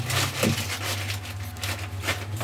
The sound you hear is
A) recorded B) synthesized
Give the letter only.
A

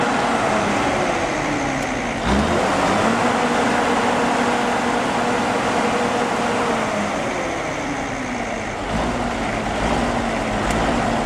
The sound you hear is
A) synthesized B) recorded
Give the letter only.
B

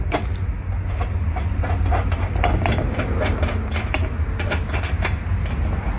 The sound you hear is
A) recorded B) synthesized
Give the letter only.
A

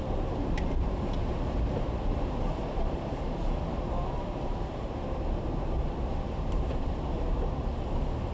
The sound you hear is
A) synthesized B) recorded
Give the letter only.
A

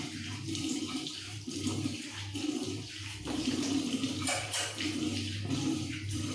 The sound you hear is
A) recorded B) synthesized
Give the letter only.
B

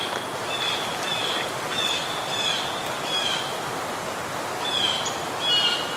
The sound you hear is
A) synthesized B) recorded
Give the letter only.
B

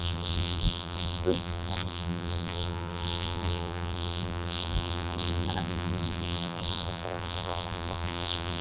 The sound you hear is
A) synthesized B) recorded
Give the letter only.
A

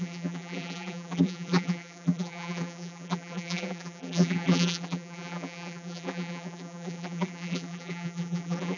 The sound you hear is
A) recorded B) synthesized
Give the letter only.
B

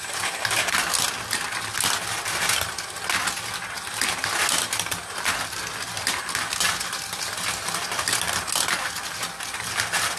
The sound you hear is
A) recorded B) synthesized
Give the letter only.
A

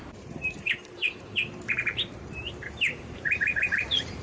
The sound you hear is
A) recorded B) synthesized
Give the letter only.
B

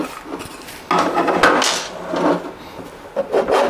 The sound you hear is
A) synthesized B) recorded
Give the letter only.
B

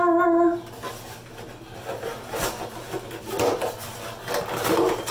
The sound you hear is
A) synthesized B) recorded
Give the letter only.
B